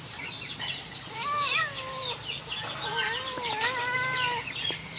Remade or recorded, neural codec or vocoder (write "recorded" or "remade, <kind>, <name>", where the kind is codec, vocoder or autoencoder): recorded